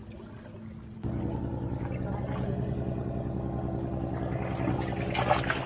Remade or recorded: recorded